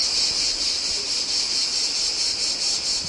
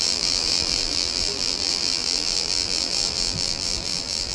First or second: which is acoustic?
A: first